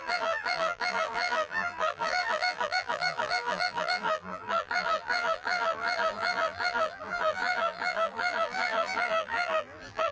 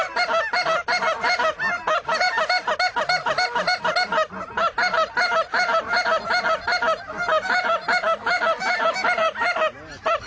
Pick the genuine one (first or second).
second